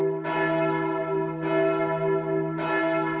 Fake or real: real